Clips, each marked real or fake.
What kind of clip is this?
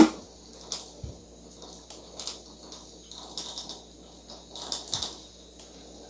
real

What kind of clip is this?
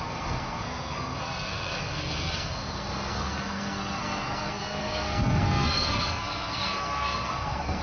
fake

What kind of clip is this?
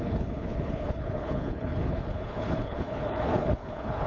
fake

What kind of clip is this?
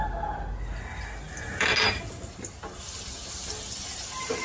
real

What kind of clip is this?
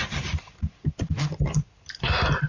real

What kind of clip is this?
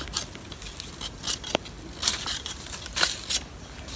real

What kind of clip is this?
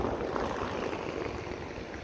fake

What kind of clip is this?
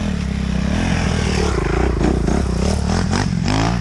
real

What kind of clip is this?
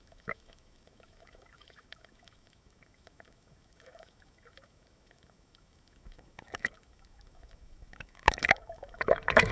fake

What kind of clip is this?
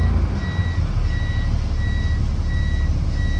real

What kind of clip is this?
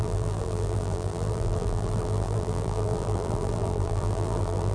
fake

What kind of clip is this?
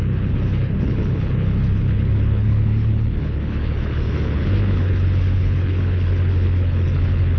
fake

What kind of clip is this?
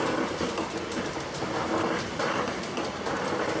real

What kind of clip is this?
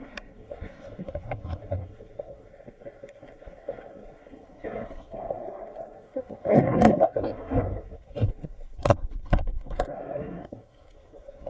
fake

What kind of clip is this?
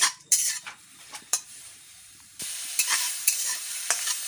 fake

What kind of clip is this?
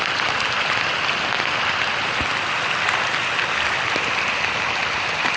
real